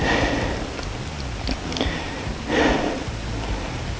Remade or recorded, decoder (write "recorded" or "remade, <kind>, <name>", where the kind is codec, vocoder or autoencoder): recorded